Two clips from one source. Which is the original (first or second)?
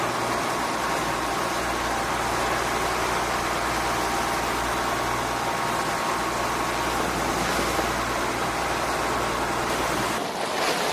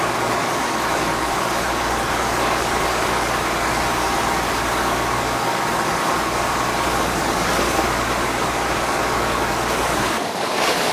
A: first